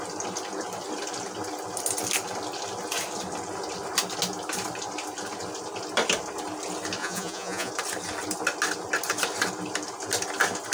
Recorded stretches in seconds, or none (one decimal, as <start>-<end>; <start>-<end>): 0.0-7.0; 7.7-10.7

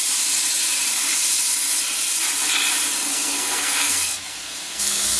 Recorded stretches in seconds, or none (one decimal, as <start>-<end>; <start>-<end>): 0.0-3.1